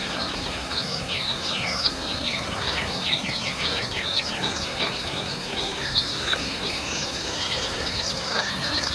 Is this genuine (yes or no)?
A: no